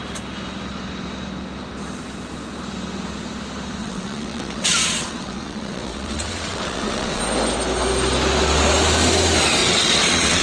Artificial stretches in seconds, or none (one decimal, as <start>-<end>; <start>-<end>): 3.8-7.2; 9.6-10.4